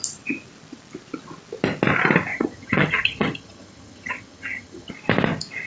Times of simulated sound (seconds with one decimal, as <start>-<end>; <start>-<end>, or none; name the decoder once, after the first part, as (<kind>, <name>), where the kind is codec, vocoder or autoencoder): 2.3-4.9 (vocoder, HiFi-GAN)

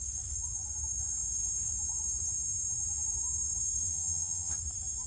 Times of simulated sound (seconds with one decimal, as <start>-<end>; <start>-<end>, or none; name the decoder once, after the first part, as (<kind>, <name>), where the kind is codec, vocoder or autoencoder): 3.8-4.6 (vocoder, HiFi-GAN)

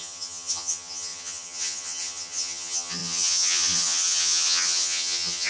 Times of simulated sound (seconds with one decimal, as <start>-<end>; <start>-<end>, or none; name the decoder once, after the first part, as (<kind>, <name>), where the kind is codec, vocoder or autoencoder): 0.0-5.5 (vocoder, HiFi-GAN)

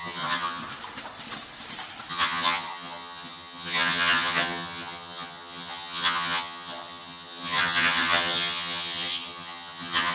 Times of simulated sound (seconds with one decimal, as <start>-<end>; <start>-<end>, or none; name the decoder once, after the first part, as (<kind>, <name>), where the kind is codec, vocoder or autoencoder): 0.0-0.6 (vocoder, HiFi-GAN); 2.1-10.1

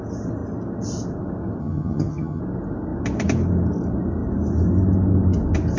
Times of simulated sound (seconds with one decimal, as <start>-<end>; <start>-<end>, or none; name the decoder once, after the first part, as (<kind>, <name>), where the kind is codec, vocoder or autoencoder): 1.6-2.4 (vocoder, HiFi-GAN)